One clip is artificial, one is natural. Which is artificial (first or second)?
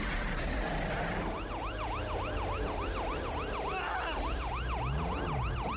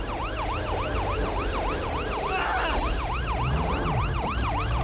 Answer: second